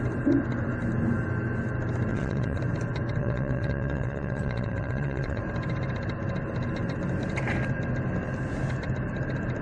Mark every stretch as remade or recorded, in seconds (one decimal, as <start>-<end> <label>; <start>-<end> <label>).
0.0-2.1 recorded; 2.1-2.6 remade; 2.6-3.2 recorded; 3.2-5.4 remade; 5.4-9.6 recorded